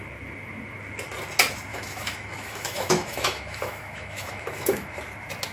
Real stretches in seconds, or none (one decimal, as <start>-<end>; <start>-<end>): 0.0-1.7; 5.0-5.5